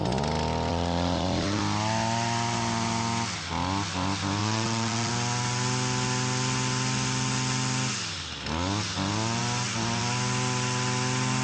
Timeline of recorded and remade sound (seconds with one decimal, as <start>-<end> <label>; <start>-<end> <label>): 0.0-0.7 recorded; 0.7-1.6 remade; 1.6-4.4 recorded; 4.4-5.1 remade; 5.1-11.4 recorded

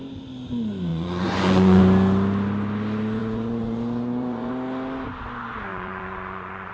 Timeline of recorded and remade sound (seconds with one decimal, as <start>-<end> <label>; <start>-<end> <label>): 0.0-0.9 recorded; 0.9-1.8 remade; 1.8-3.2 recorded; 3.2-4.5 remade; 4.5-5.7 recorded; 5.7-6.7 remade

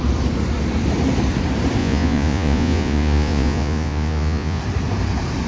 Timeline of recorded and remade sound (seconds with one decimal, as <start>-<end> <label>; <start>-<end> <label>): 0.0-1.8 recorded; 1.8-4.6 remade; 4.6-5.5 recorded

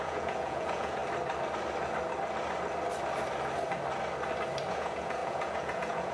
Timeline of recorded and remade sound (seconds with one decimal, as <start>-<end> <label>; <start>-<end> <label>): 0.0-1.0 remade; 1.0-4.7 recorded; 4.7-6.1 remade